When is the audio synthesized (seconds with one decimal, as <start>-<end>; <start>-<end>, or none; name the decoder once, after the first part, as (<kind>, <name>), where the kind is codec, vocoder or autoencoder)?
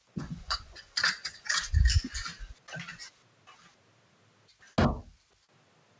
0.0-1.7 (vocoder, Vocos)